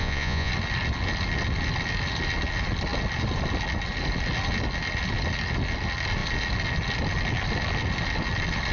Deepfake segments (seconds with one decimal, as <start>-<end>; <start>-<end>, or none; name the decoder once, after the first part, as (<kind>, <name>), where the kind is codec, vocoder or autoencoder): 0.0-0.5 (vocoder, Vocos)